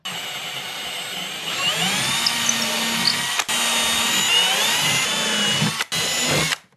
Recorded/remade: recorded